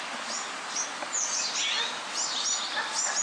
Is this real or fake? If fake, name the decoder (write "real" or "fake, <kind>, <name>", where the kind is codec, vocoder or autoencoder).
real